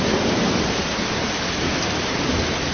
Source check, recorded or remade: recorded